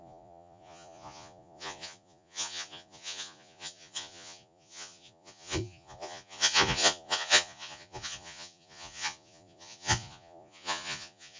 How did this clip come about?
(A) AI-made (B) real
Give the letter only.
A